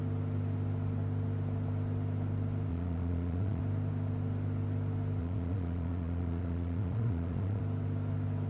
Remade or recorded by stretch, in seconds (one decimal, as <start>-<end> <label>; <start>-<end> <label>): 0.0-2.7 recorded; 2.7-3.6 remade; 3.6-5.2 recorded; 5.2-7.6 remade; 7.6-8.5 recorded